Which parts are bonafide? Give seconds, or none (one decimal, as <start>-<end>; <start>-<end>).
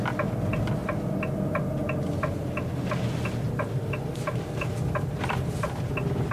0.0-6.3